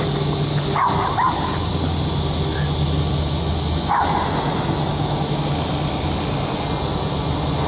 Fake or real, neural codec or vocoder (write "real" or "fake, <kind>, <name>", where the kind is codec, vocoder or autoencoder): real